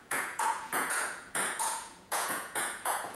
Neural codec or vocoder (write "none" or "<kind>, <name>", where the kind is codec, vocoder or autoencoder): vocoder, Vocos